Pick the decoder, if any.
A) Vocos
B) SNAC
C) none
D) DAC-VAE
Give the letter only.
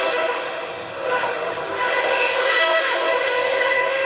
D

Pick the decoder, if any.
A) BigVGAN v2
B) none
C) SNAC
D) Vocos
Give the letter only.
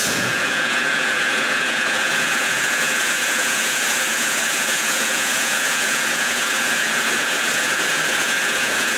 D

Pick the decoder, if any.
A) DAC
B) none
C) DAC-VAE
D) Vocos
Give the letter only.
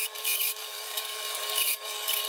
A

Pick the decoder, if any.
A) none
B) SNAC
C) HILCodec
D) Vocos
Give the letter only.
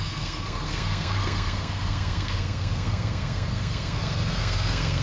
B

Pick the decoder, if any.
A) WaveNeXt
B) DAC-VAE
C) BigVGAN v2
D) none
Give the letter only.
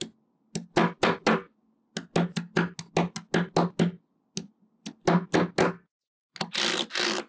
D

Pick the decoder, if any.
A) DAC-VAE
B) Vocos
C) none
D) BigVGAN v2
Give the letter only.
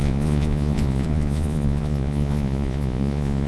B